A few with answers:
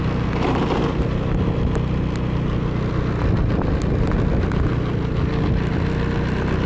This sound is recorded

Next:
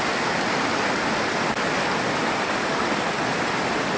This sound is recorded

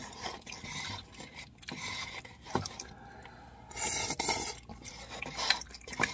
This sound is recorded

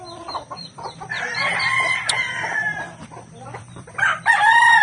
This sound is remade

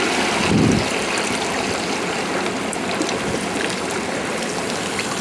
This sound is recorded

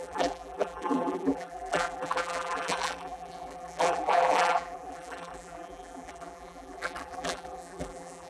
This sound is remade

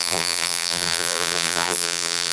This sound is remade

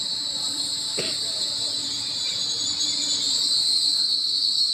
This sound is remade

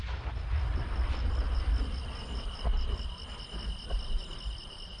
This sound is recorded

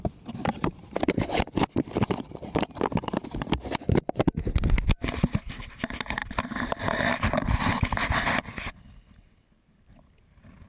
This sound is remade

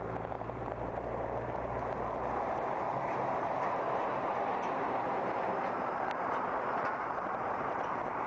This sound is remade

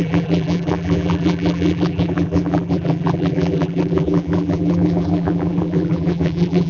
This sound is remade